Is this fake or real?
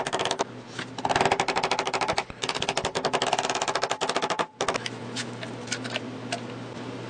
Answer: real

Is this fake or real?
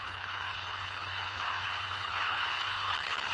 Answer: fake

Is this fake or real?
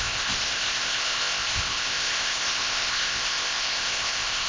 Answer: fake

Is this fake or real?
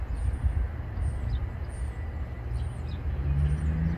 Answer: real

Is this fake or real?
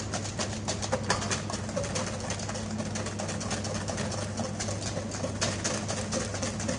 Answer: real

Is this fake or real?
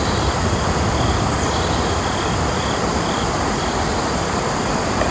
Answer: real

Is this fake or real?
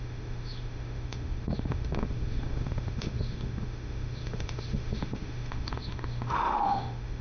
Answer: fake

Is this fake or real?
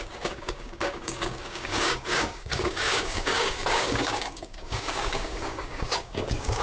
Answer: fake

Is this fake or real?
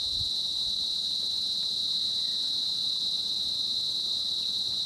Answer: real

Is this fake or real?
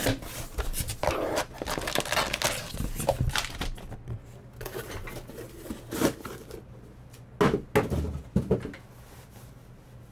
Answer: real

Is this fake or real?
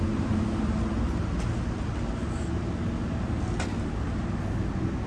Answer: real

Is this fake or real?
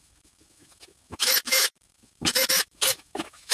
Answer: fake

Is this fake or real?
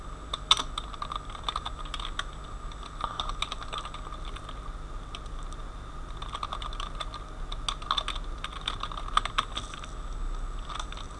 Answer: real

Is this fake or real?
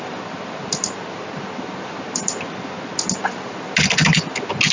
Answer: real